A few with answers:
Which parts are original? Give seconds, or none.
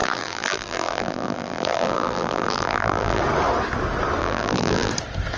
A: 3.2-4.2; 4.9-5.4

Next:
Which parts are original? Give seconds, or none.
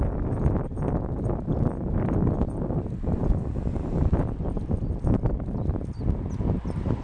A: 0.0-3.2; 6.0-7.0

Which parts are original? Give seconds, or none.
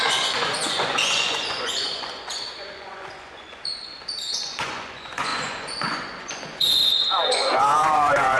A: none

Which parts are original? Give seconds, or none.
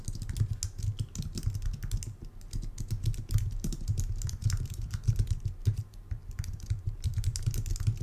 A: 0.0-4.4; 5.5-5.9; 7.4-8.0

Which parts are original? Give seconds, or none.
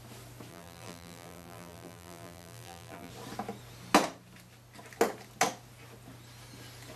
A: 0.0-0.5; 3.1-7.0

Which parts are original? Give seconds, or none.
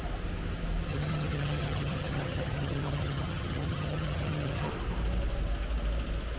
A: 0.0-0.9; 4.7-6.4